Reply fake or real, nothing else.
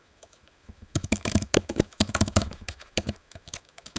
fake